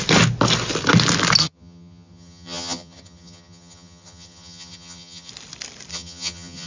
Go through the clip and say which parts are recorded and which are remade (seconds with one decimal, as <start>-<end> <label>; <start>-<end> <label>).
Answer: 0.0-1.4 recorded; 1.4-5.3 remade; 5.3-5.9 recorded; 5.9-6.7 remade